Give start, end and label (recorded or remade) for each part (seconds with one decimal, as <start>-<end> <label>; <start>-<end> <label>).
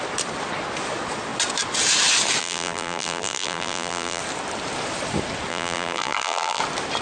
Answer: 0.0-2.4 recorded; 2.4-4.2 remade; 4.2-5.5 recorded; 5.5-6.6 remade; 6.6-7.0 recorded